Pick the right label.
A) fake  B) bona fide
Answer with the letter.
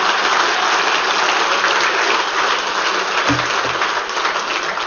B